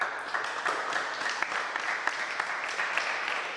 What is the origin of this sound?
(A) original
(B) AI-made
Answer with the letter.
A